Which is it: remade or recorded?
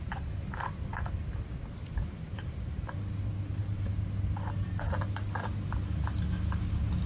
recorded